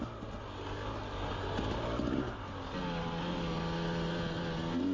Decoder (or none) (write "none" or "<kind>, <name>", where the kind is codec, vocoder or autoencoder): none